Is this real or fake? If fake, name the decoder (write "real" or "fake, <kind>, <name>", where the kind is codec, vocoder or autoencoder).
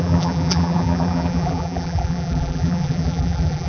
fake, vocoder, BigVGAN v2